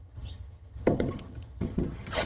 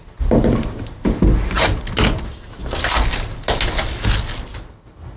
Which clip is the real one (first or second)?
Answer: second